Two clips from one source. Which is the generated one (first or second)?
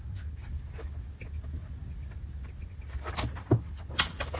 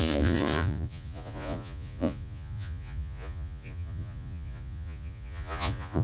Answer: second